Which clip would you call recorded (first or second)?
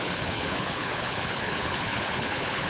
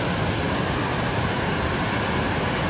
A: second